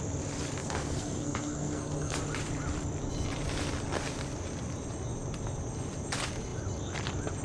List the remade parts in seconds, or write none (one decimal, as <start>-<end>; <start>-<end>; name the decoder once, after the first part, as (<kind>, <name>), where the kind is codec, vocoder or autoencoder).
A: 0.6-2.2 (codec, SNAC)